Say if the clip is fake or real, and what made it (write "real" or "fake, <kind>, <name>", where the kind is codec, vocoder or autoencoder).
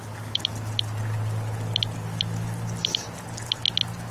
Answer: real